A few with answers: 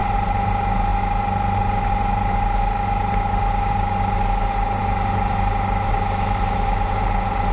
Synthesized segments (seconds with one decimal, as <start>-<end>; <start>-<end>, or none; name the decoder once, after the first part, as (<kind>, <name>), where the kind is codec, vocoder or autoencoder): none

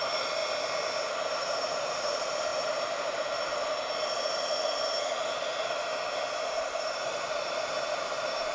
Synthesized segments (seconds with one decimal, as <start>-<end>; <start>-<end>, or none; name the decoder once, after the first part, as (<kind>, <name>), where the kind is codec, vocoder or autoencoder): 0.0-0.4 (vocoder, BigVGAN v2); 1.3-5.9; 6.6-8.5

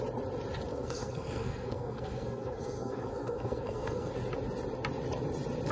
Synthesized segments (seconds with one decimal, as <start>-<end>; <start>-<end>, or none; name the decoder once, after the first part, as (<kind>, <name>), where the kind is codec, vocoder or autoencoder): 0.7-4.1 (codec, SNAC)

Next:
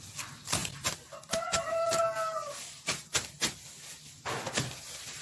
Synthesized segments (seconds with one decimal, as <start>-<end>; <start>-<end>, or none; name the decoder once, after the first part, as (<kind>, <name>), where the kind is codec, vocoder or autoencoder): 0.6-2.0 (vocoder, BigVGAN v2)

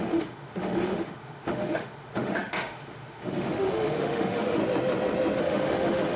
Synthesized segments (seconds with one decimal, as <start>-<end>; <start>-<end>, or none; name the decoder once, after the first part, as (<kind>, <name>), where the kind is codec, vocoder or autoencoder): 0.0-4.6 (autoencoder, DAC-VAE); 5.4-6.2

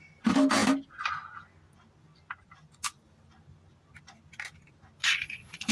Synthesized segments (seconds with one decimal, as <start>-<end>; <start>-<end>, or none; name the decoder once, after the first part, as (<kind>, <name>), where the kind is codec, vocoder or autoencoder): 5.0-5.7 (vocoder, Vocos)

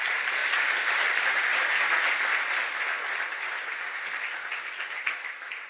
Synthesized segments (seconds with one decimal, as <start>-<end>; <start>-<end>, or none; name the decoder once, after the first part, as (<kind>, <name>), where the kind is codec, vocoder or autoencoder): none